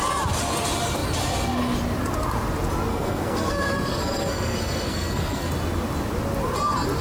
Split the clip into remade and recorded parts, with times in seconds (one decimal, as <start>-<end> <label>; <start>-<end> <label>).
0.0-2.9 recorded; 2.9-5.5 remade; 5.5-7.0 recorded